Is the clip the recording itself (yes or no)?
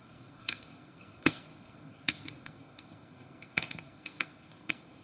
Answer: no